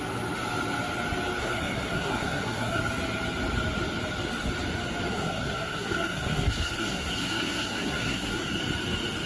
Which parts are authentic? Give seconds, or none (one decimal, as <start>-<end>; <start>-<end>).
0.0-1.4; 2.8-5.1; 8.6-9.3